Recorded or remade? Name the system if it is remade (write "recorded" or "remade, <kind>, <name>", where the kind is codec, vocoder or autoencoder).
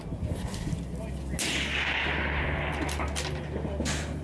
recorded